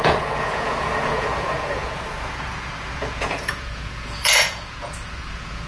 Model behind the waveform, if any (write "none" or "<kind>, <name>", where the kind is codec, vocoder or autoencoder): vocoder, Vocos